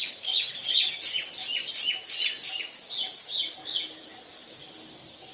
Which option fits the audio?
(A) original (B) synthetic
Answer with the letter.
A